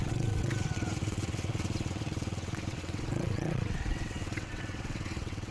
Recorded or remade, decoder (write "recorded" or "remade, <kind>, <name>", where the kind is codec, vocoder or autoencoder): remade, vocoder, WaveNeXt